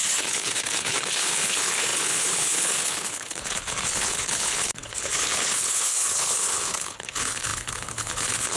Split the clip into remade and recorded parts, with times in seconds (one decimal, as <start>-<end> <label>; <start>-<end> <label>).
0.0-8.6 remade